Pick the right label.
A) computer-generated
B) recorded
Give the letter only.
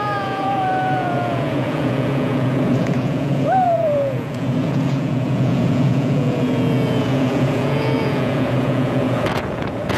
A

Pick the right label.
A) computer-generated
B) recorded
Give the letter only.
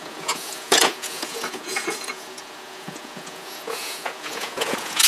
A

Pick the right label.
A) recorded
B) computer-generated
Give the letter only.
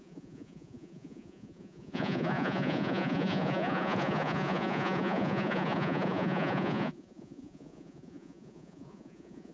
B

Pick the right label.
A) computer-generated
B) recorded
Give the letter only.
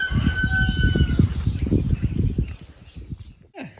B